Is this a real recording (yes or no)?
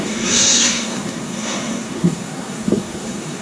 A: no